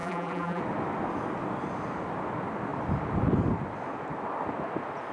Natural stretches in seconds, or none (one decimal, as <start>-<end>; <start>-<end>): 0.6-5.1